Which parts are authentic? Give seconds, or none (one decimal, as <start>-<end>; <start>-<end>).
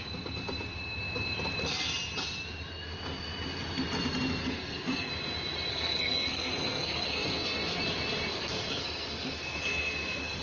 0.0-4.4; 5.1-5.7; 7.8-8.3